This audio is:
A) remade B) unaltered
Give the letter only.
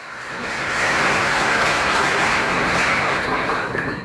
A